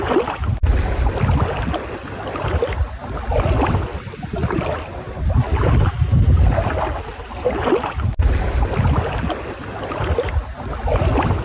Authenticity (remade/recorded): recorded